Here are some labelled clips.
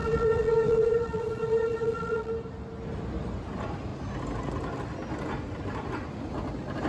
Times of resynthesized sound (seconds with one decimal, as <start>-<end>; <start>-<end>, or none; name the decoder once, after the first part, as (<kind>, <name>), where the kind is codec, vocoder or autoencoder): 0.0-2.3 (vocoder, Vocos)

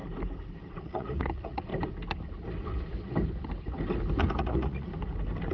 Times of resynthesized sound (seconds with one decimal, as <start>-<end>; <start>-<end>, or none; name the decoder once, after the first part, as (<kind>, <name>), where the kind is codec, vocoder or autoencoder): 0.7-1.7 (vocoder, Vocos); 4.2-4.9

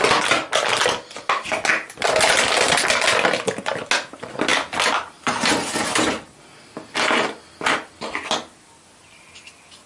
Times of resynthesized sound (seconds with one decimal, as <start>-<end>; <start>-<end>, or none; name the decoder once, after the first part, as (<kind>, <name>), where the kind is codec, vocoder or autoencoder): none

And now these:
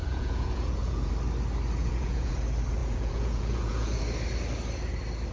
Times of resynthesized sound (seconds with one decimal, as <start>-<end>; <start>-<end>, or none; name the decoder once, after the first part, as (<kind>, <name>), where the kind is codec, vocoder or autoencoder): 0.0-1.1 (vocoder, Vocos); 1.8-2.3; 2.8-4.0